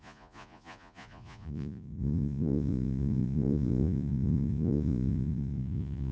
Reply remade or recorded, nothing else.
remade